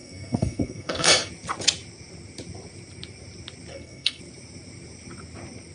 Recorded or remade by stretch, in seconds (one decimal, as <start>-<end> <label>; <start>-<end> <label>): 0.0-1.3 remade; 1.3-3.7 recorded; 3.7-4.2 remade; 4.2-5.7 recorded